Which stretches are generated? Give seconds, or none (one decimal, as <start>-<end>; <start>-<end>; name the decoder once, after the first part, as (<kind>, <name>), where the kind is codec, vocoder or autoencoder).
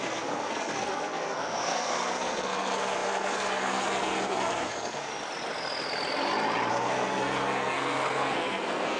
0.0-5.1 (codec, SNAC); 6.7-9.0